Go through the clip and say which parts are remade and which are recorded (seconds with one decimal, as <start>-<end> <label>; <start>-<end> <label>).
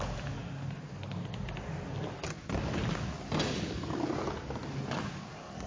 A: 0.0-5.7 recorded